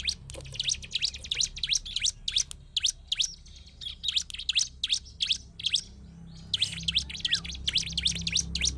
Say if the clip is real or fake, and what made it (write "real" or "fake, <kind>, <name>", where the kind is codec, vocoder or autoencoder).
real